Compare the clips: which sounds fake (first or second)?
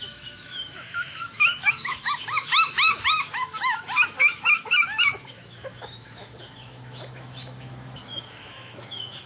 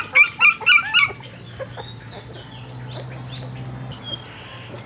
first